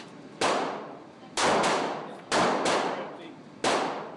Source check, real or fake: real